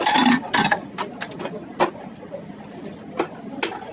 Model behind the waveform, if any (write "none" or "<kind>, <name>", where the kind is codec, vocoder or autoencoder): none